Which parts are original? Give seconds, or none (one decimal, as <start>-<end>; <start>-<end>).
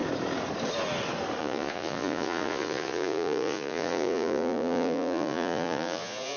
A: 0.0-1.4